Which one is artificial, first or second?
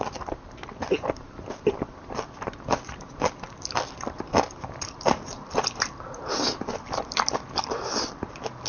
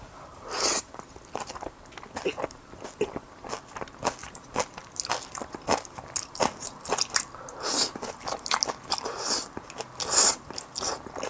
first